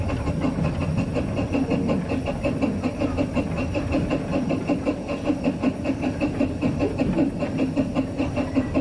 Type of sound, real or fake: real